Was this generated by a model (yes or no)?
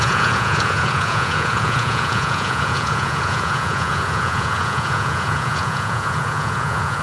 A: yes